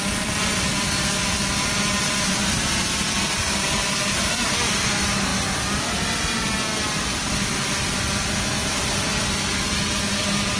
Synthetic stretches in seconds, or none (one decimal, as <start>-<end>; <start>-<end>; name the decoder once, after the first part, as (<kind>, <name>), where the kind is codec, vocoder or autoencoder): none